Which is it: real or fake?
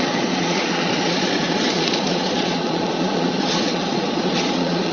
fake